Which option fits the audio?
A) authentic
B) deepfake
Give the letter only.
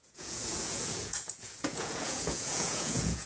B